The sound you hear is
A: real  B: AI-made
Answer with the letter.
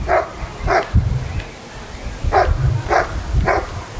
A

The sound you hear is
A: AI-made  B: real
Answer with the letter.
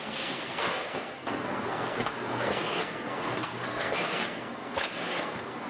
A